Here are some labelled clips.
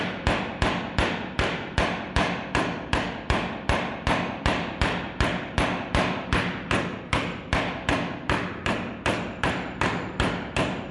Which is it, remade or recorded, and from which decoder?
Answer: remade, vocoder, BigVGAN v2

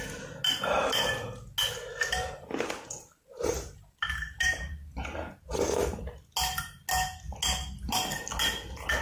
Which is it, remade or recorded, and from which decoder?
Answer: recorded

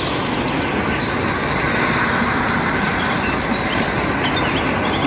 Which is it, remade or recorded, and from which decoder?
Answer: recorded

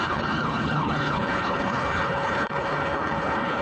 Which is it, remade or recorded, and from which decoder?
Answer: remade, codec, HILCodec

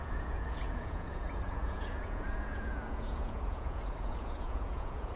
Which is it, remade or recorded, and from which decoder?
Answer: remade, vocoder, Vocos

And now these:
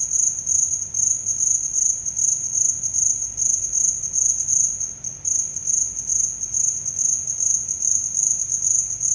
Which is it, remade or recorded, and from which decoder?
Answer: recorded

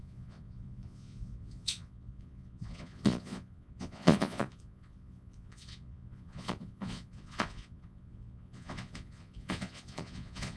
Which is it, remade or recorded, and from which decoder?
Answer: remade, vocoder, Vocos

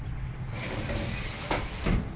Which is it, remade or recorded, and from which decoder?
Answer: recorded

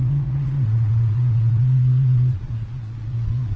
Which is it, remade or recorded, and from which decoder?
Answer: remade, vocoder, Vocos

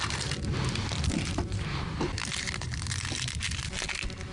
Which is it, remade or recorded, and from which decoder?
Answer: recorded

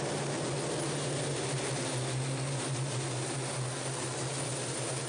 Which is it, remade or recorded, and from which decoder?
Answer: recorded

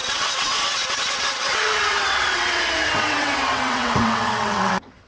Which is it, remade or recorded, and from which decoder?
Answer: remade, vocoder, WaveNeXt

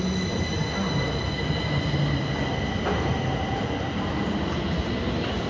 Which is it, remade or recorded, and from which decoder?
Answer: recorded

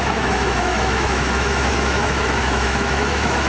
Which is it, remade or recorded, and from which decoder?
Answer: remade, autoencoder, DAC-VAE